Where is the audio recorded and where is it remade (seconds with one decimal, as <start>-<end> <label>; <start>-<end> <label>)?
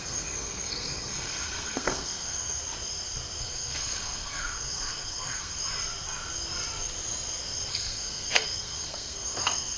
0.0-2.6 remade; 2.6-3.4 recorded; 3.4-5.6 remade; 5.6-7.7 recorded; 7.7-9.8 remade